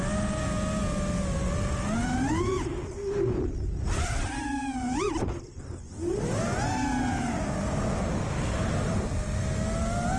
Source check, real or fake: real